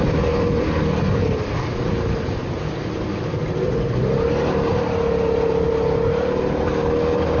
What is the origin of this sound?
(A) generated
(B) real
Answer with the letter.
B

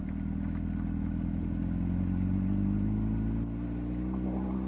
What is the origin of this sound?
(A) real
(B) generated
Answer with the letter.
A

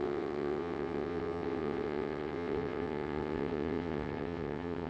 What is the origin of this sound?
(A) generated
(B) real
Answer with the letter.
A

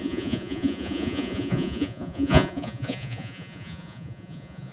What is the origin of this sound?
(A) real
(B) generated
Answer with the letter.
B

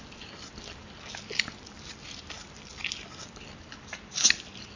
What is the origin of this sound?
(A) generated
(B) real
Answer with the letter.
B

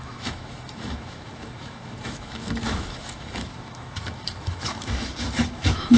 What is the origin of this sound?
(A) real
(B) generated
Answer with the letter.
B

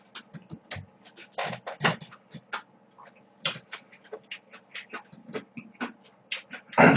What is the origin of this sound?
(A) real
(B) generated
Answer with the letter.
A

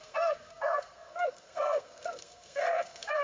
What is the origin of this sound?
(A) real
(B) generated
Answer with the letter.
B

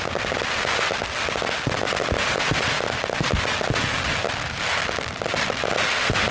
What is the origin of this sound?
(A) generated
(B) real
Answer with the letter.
B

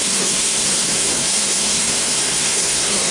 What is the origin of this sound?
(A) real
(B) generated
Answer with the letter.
B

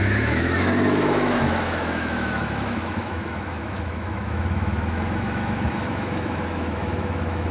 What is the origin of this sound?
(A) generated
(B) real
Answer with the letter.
A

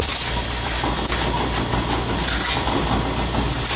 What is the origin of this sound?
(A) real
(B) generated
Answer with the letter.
A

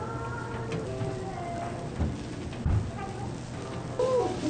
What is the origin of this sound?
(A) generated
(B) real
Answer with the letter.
B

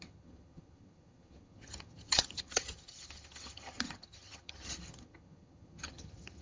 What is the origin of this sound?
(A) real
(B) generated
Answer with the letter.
B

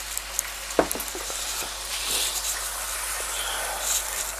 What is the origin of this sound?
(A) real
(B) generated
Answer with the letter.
A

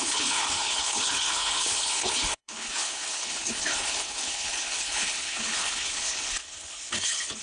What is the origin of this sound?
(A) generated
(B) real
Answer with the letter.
A